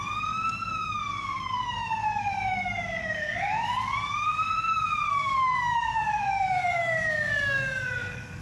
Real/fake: fake